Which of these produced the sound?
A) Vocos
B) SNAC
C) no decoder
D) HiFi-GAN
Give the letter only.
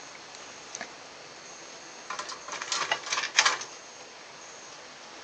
C